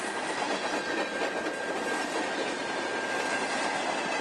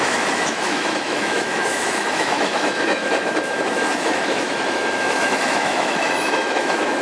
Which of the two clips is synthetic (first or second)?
second